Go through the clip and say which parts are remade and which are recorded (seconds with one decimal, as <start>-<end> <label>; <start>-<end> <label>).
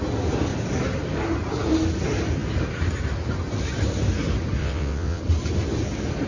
0.0-4.6 recorded; 4.6-5.2 remade; 5.2-6.3 recorded